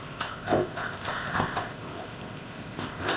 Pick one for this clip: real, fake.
fake